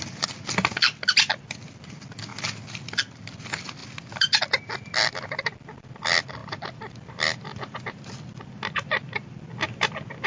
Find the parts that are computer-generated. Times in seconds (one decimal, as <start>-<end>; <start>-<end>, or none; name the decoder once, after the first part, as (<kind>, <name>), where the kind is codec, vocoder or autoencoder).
6.4-8.5 (vocoder, BigVGAN v2)